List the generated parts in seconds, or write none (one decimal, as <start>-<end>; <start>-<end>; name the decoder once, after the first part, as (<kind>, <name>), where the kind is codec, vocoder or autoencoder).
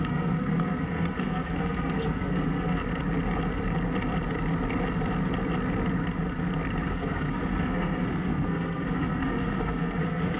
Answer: 0.0-2.8 (codec, SNAC); 6.8-10.4